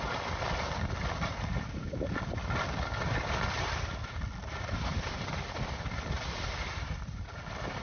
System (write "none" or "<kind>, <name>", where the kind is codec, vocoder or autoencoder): none